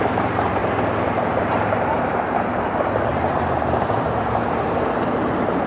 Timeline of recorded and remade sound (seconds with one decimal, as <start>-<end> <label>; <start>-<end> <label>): 0.0-3.1 remade; 3.1-3.8 recorded; 3.8-5.7 remade